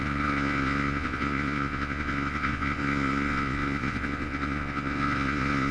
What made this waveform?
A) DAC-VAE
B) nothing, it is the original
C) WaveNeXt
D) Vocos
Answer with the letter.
D